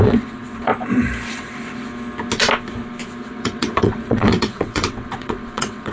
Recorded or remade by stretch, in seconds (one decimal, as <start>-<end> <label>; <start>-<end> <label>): 0.0-0.7 remade; 0.7-1.3 recorded; 1.3-1.9 remade; 1.9-3.2 recorded; 3.2-5.9 remade